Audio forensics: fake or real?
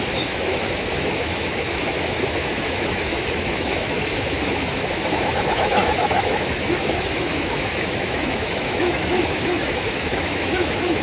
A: fake